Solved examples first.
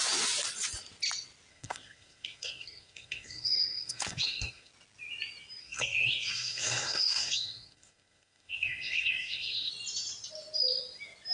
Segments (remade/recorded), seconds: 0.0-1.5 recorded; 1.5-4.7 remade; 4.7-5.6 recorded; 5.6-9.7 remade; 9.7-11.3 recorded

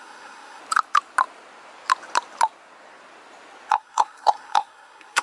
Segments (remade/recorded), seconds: 0.0-0.6 remade; 0.6-3.7 recorded; 3.7-5.2 remade

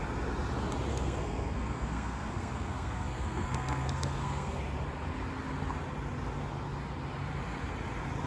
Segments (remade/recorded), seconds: 0.0-0.9 recorded; 0.9-4.6 remade; 4.6-8.3 recorded

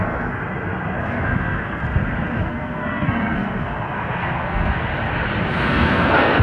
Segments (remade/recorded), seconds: 0.0-0.4 remade; 0.4-1.0 recorded; 1.0-1.8 remade; 1.8-2.4 recorded; 2.4-4.9 remade; 4.9-5.5 recorded; 5.5-6.4 remade

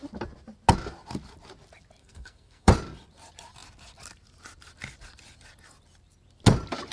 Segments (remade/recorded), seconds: 0.0-2.0 recorded; 2.0-2.7 remade; 2.7-6.9 recorded